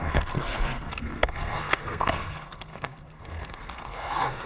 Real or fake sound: fake